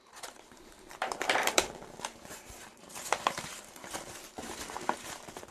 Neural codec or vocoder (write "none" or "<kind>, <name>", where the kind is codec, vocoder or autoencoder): vocoder, BigVGAN v2